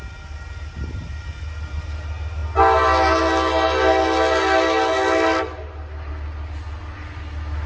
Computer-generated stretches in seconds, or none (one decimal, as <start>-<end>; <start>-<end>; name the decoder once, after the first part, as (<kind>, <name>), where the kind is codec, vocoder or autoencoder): none

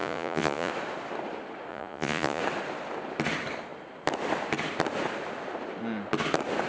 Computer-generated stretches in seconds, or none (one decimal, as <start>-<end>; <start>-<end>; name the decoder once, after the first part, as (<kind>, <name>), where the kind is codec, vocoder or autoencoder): 0.0-0.7 (vocoder, Vocos); 1.7-2.4

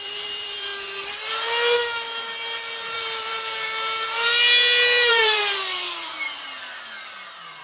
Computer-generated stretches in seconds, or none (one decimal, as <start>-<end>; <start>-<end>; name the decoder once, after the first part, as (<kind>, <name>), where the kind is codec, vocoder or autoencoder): 0.0-0.7 (vocoder, BigVGAN v2); 2.9-3.3; 5.1-6.1

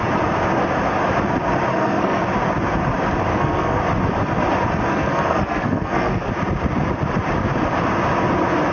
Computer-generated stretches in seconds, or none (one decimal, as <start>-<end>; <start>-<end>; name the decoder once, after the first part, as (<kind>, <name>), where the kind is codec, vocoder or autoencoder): 1.7-2.2 (codec, SNAC); 3.3-3.8; 4.9-6.3

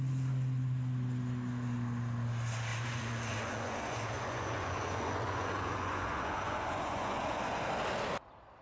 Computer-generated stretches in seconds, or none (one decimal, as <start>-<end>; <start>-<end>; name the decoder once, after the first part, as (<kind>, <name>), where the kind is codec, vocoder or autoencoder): 2.7-7.7 (vocoder, Vocos)

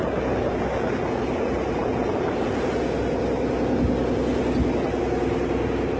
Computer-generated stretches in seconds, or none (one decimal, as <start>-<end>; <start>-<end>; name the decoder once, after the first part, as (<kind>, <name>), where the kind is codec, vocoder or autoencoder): none

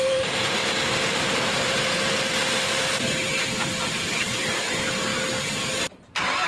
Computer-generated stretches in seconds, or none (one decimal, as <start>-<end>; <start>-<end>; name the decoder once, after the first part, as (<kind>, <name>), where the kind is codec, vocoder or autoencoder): 0.0-0.6 (vocoder, BigVGAN v2); 1.3-5.1; 5.8-6.5